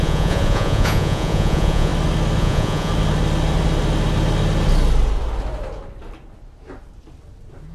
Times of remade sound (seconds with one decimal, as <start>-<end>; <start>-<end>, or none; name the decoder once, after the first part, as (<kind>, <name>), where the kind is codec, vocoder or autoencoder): 0.0-1.9 (vocoder, Vocos); 2.4-2.9